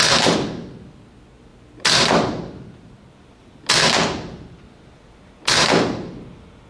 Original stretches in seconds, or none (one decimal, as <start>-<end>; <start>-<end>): 0.0-6.7